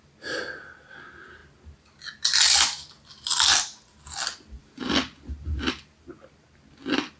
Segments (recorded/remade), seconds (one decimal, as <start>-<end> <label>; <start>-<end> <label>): 0.0-7.2 recorded

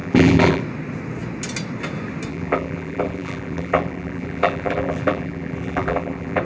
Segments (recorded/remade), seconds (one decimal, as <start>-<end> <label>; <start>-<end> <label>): 0.0-0.6 remade; 0.6-2.3 recorded; 2.3-6.4 remade

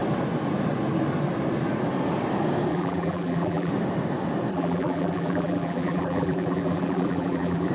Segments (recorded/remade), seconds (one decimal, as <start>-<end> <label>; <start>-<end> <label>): 0.0-2.7 recorded; 2.7-3.7 remade; 3.7-4.5 recorded; 4.5-7.7 remade

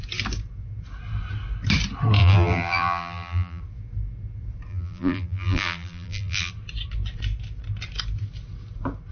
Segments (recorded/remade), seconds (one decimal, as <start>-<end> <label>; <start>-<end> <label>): 0.0-2.2 recorded; 2.2-3.6 remade; 3.6-4.7 recorded; 4.7-6.5 remade; 6.5-9.1 recorded